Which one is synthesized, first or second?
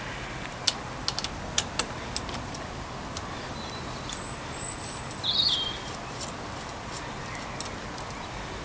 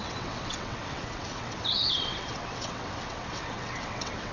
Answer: second